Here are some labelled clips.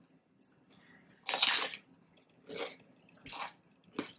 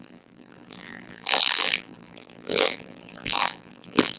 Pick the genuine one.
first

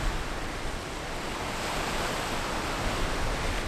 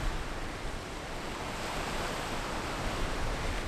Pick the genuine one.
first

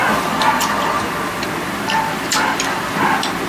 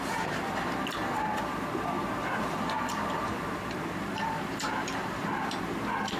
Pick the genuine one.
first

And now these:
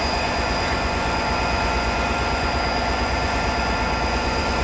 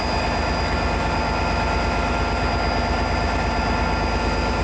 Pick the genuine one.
second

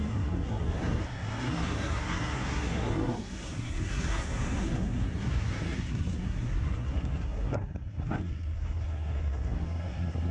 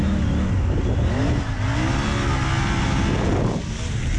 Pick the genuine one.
second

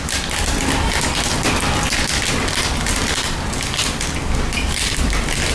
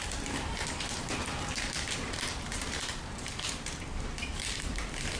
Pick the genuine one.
first